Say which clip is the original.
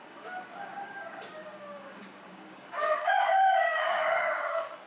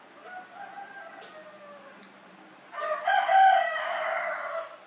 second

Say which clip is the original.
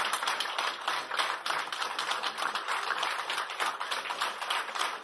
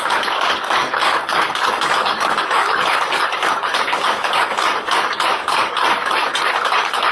first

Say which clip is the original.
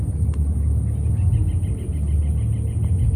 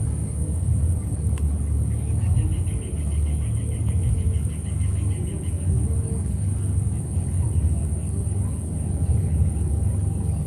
first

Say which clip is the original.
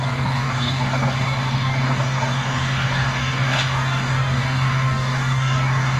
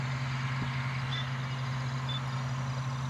second